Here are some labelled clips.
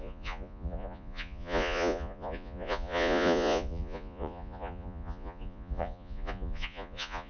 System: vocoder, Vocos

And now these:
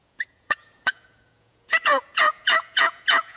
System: vocoder, Vocos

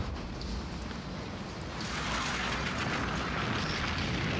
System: none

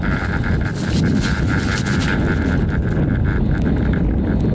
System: none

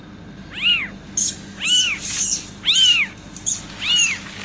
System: none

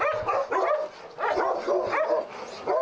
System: none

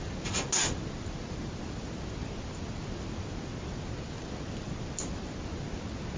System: none